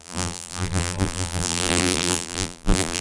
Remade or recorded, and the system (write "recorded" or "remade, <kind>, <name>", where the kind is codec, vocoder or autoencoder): remade, vocoder, BigVGAN v2